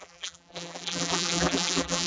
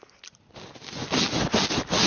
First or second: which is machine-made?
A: first